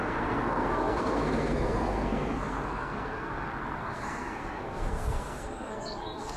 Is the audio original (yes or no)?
no